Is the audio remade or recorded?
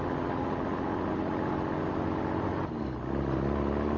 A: recorded